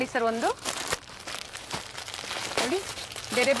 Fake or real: fake